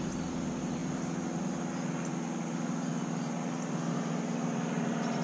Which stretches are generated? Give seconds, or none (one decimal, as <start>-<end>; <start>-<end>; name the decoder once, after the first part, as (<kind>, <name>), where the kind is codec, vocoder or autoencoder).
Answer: none

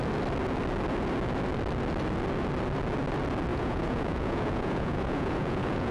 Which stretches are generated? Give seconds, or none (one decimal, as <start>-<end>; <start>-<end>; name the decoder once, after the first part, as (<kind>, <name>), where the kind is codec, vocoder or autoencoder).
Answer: 3.5-5.9 (vocoder, Vocos)

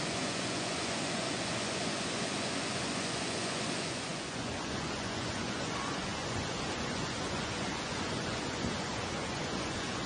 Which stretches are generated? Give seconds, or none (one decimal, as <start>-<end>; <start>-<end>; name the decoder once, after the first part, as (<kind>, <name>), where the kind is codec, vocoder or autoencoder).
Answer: 0.0-10.1 (vocoder, Vocos)

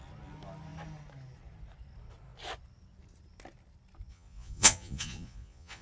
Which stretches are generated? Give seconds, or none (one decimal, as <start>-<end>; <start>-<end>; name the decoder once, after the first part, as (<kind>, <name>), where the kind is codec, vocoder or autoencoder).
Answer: 4.1-5.8 (vocoder, Vocos)

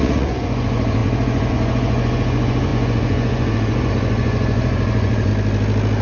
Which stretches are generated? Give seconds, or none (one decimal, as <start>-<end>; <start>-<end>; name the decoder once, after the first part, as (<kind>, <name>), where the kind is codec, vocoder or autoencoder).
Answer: 0.0-5.3 (vocoder, Vocos)